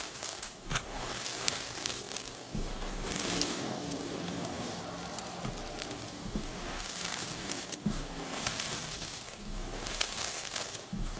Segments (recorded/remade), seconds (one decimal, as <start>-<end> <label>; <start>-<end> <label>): 0.0-4.8 remade; 4.8-5.9 recorded; 5.9-11.2 remade

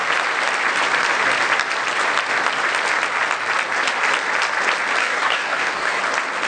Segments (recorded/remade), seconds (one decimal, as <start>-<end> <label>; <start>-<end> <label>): 0.0-5.0 recorded; 5.0-6.0 remade; 6.0-6.5 recorded

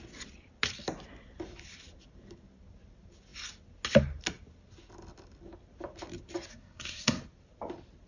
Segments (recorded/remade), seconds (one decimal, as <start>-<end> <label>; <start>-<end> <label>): 0.0-6.5 recorded; 6.5-7.2 remade; 7.2-8.1 recorded

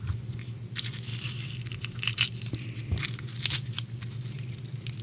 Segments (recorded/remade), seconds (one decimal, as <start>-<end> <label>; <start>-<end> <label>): 0.0-1.1 recorded; 1.1-3.0 remade; 3.0-5.0 recorded

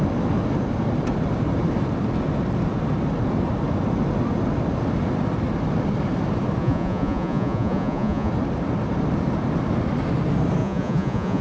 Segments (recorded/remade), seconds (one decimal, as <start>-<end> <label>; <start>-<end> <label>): 0.0-6.6 recorded; 6.6-8.3 remade; 8.3-10.6 recorded; 10.6-11.4 remade